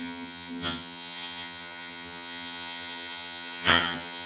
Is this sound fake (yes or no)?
yes